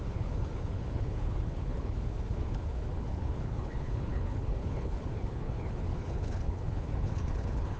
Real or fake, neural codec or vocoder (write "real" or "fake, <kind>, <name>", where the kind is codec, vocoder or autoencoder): fake, codec, HILCodec